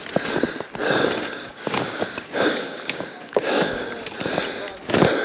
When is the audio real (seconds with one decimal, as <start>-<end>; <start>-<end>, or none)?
0.0-0.8; 3.9-5.2